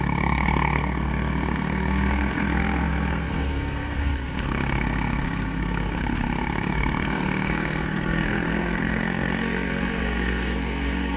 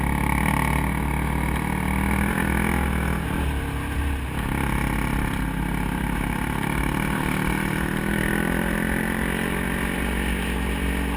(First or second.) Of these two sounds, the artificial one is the first